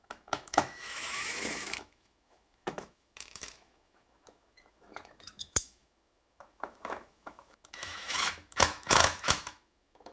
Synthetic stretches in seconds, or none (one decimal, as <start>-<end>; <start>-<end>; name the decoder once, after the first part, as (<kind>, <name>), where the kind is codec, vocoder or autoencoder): 0.0-10.1 (autoencoder, DAC-VAE)